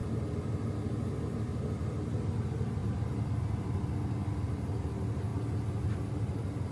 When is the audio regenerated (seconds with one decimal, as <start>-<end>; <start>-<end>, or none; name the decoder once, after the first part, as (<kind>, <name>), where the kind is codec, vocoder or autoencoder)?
2.8-3.8 (vocoder, BigVGAN v2)